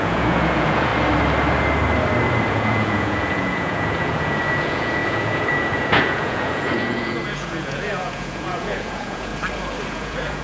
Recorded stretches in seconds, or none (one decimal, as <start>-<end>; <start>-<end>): 0.9-2.5; 9.3-9.9